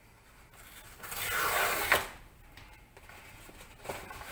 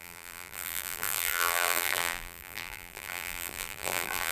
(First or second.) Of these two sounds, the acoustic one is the first